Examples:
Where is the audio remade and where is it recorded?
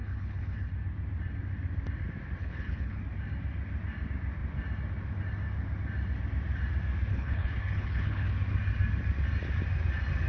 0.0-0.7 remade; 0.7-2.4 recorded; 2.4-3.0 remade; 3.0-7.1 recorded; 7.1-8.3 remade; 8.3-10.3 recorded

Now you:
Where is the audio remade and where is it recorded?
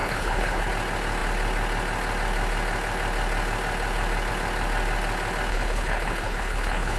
0.0-0.7 remade; 0.7-5.5 recorded; 5.5-7.0 remade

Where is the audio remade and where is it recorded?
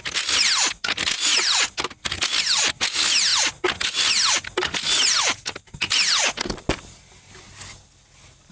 0.0-8.5 recorded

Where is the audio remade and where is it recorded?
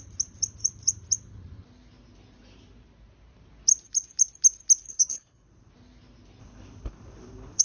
0.0-4.9 recorded; 4.9-5.7 remade; 5.7-6.4 recorded; 6.4-7.6 remade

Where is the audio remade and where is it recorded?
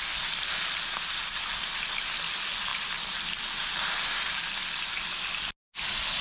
0.0-6.2 recorded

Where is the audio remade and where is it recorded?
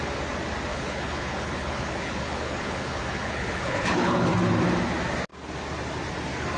0.0-0.7 recorded; 0.7-4.3 remade; 4.3-6.6 recorded